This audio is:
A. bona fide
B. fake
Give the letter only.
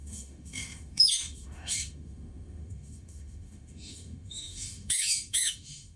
B